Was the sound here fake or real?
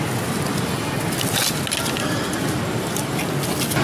real